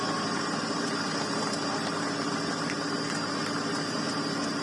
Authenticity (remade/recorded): recorded